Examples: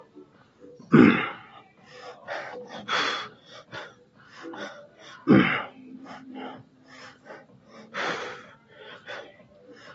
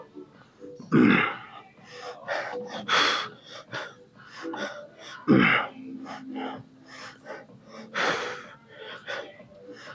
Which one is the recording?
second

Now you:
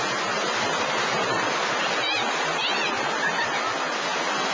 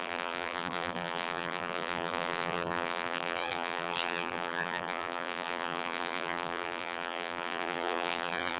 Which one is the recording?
first